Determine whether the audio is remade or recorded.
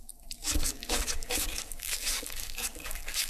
remade